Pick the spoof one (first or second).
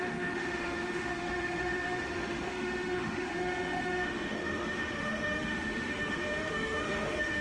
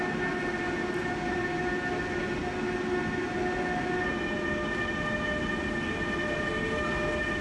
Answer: first